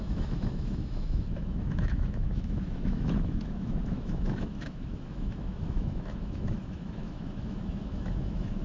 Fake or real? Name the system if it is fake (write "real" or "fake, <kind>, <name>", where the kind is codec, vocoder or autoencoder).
fake, autoencoder, DAC-VAE